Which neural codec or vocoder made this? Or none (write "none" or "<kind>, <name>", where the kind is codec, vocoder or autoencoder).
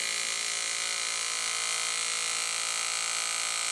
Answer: none